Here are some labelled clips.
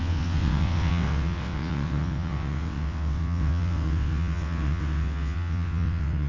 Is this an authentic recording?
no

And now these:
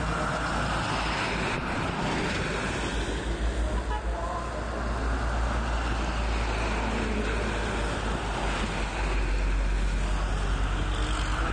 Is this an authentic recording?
yes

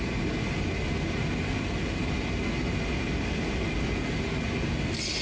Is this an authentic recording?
yes